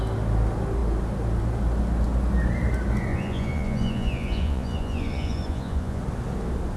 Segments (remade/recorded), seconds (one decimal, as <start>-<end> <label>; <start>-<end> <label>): 0.0-3.1 recorded; 3.1-6.0 remade; 6.0-6.8 recorded